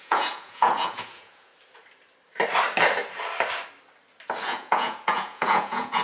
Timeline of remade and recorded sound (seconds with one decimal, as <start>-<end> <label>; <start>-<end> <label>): 0.0-1.5 remade; 1.5-4.4 recorded; 4.4-6.0 remade